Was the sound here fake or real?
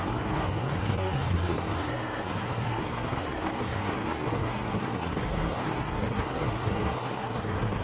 fake